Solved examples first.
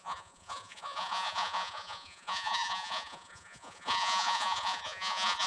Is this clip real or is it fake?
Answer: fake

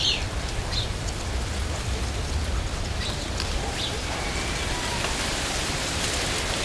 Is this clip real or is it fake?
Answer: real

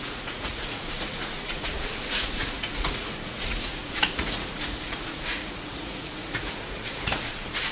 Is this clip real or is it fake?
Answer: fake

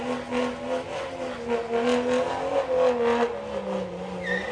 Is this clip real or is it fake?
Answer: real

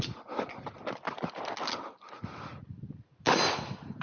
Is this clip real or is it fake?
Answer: real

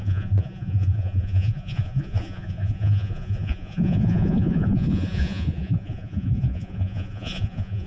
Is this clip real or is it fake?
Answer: fake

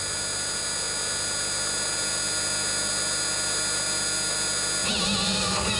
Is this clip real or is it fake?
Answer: real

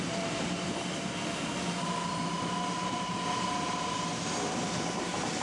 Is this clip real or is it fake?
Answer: real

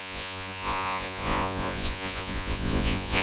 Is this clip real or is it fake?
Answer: fake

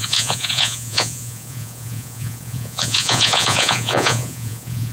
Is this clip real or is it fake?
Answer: fake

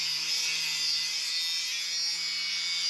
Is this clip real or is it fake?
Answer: real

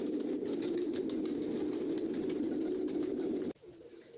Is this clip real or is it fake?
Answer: real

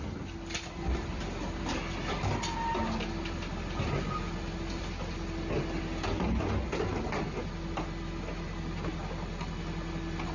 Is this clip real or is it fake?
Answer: real